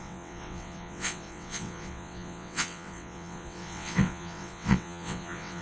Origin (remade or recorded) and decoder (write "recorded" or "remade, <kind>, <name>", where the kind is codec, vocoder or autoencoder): remade, vocoder, WaveNeXt